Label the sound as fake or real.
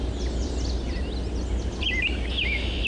real